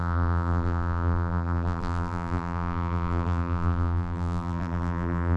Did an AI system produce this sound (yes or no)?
yes